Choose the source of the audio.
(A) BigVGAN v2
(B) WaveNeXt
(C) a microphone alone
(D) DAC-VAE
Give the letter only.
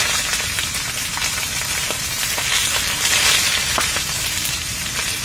A